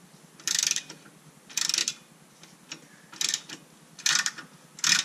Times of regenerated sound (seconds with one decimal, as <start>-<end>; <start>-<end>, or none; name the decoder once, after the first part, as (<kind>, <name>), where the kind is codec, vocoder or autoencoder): none